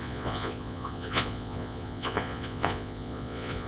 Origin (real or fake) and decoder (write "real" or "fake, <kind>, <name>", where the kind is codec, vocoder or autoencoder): fake, vocoder, Vocos